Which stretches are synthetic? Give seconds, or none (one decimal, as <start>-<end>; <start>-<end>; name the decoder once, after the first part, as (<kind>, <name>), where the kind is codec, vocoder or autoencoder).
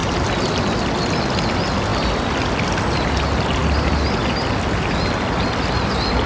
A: none